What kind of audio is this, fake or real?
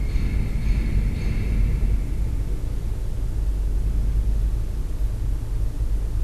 real